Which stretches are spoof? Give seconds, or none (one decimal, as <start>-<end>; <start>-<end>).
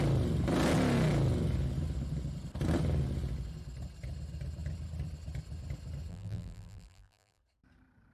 6.1-7.4